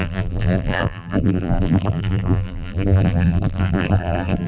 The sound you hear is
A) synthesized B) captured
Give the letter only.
A